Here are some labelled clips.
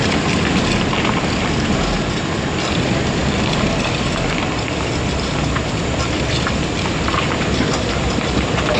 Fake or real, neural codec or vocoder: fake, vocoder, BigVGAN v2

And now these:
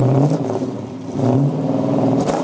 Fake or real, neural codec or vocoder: fake, vocoder, BigVGAN v2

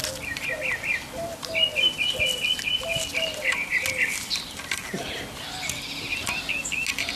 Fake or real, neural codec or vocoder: real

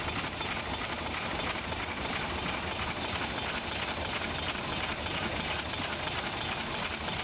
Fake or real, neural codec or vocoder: real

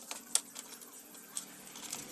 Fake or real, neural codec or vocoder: real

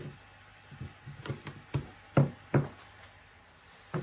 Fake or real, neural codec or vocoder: real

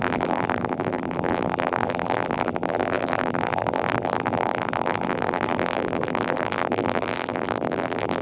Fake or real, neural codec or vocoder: fake, vocoder, BigVGAN v2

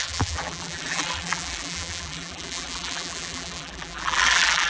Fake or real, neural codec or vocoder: fake, vocoder, BigVGAN v2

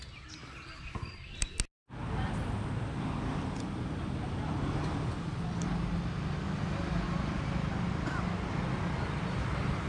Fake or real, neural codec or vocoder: real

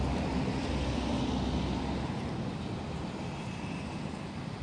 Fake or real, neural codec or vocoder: fake, vocoder, BigVGAN v2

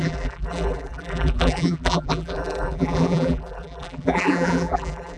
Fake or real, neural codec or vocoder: fake, vocoder, BigVGAN v2